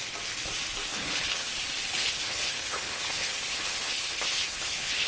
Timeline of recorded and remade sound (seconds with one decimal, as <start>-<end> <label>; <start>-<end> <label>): 0.0-0.9 recorded; 0.9-1.5 remade; 1.5-1.9 recorded; 1.9-5.1 remade